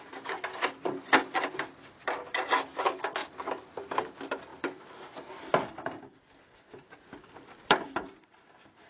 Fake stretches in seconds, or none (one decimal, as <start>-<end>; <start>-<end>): none